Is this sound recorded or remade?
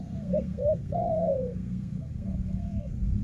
remade